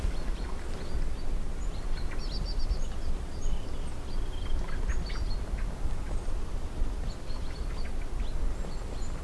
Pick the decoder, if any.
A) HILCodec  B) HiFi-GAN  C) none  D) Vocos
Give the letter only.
C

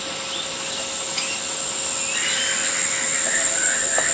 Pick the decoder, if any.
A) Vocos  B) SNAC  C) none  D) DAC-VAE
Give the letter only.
C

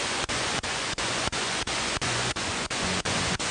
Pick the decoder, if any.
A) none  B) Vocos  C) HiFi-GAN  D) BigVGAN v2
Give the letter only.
B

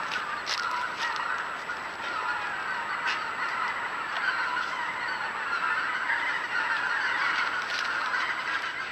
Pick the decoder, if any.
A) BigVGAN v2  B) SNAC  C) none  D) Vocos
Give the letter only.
C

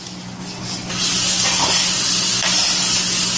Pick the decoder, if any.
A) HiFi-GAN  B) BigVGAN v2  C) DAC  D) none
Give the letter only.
D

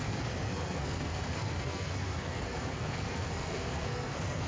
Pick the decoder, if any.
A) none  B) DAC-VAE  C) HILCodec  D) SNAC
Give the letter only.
D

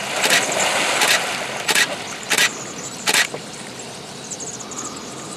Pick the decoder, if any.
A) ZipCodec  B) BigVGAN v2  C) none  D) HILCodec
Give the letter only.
C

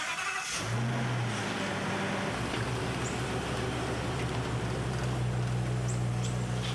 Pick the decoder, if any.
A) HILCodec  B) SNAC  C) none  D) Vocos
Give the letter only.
C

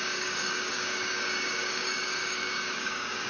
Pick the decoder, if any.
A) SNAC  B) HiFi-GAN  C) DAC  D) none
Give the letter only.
C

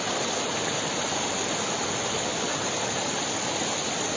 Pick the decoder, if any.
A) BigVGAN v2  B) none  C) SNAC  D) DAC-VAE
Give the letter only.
B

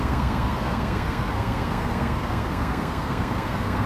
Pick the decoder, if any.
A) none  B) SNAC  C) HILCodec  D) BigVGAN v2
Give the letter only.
B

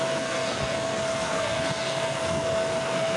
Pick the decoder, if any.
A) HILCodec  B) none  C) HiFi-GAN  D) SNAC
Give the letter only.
D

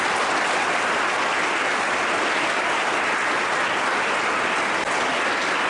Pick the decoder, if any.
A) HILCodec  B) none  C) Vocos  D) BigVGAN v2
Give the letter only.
B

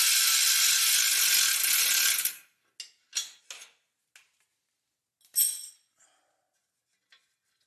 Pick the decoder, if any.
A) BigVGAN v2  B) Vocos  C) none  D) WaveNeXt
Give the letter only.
C